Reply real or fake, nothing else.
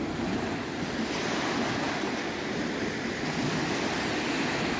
real